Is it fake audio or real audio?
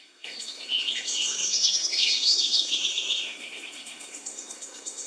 fake